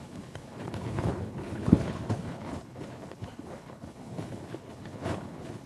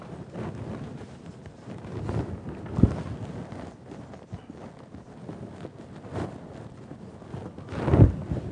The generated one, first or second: first